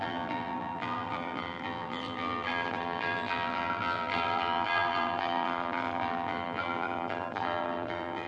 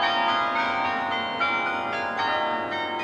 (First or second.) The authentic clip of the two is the second